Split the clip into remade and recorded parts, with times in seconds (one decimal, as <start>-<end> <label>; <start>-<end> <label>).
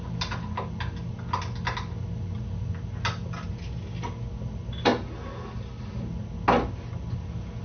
0.0-7.6 recorded